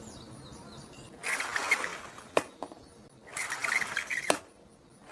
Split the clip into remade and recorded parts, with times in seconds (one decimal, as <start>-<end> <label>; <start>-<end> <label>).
0.0-5.1 recorded